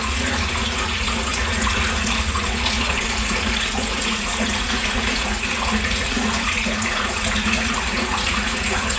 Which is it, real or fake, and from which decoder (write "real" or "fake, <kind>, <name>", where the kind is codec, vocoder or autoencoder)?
fake, vocoder, Vocos